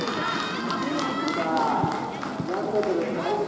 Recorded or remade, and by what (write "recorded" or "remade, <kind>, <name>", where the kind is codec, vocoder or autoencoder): recorded